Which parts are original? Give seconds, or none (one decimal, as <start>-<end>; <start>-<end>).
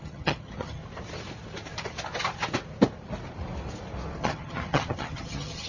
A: 0.8-4.2